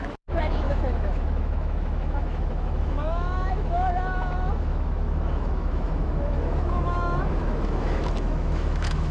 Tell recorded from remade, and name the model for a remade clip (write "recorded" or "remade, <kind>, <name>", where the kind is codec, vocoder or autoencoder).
remade, autoencoder, DAC-VAE